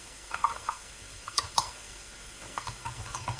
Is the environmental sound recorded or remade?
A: remade